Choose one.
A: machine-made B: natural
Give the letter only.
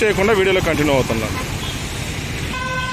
B